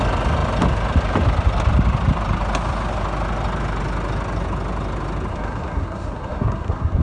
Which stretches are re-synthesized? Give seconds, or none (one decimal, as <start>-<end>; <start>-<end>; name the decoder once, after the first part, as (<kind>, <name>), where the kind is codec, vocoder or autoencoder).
5.3-7.0 (codec, SNAC)